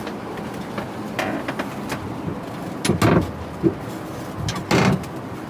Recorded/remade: recorded